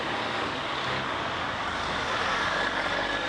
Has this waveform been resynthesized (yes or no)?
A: yes